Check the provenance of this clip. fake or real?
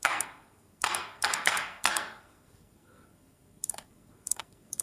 fake